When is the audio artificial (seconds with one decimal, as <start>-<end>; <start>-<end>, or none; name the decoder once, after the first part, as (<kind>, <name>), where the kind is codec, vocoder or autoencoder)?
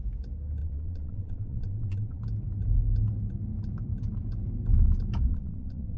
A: 0.6-2.2 (vocoder, WaveNeXt); 5.3-6.0